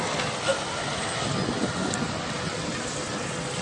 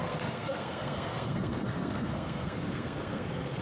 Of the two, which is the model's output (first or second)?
second